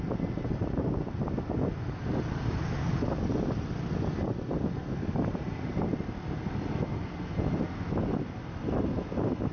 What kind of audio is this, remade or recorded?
recorded